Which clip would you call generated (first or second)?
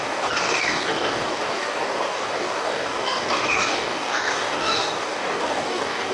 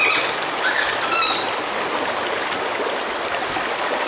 first